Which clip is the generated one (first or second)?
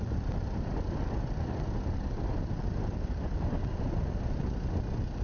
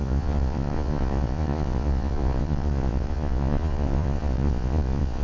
second